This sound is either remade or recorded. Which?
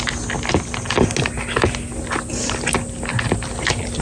recorded